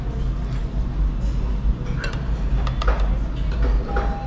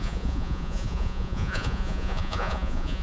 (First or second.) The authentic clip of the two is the first